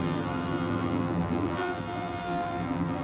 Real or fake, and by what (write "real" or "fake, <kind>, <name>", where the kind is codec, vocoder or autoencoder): fake, vocoder, BigVGAN v2